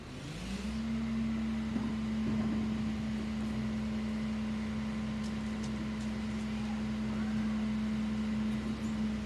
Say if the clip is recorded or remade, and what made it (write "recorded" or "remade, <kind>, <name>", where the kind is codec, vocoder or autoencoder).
recorded